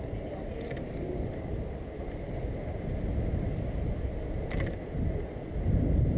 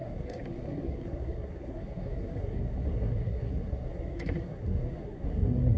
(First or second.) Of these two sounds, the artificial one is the second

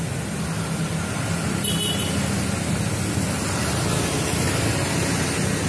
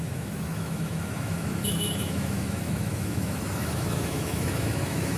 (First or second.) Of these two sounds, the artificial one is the second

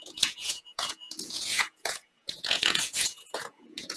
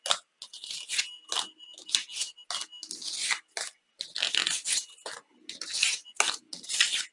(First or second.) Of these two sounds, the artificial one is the first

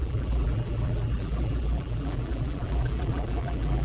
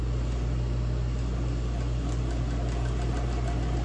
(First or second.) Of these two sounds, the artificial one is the first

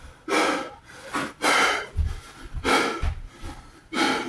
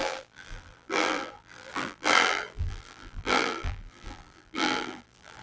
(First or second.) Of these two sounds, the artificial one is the second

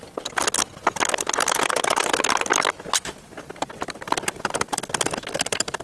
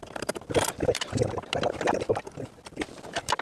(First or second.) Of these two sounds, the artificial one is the second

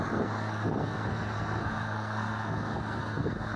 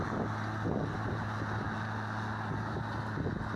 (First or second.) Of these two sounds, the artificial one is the first